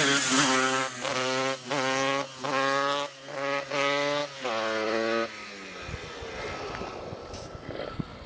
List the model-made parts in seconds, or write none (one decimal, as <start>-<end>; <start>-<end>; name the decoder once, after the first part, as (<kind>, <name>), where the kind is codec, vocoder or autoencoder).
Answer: none